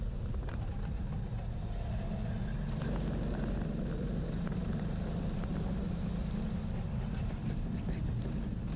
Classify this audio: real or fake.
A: real